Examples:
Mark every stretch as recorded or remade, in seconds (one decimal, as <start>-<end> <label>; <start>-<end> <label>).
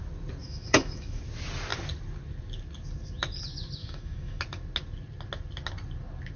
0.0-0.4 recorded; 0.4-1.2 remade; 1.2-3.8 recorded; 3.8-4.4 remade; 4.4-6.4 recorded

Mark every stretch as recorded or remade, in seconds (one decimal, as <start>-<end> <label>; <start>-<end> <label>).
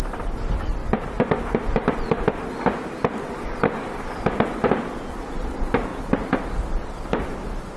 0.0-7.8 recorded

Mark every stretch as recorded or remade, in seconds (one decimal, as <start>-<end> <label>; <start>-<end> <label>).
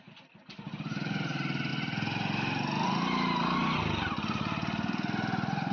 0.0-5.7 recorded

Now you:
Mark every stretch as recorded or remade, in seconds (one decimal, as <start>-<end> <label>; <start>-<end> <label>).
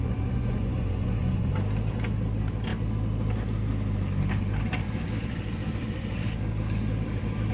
0.0-1.5 remade; 1.5-7.5 recorded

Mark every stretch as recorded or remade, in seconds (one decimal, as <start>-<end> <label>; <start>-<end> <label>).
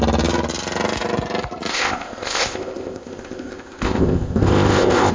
0.0-1.7 recorded; 1.7-5.1 remade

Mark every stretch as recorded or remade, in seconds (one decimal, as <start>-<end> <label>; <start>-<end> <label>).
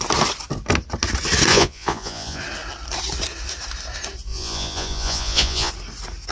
0.0-1.5 recorded; 1.5-2.4 remade; 2.4-4.3 recorded; 4.3-5.7 remade; 5.7-6.3 recorded